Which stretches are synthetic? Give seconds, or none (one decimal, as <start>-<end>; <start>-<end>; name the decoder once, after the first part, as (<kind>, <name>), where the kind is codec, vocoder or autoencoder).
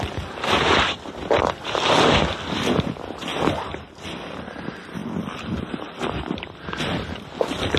none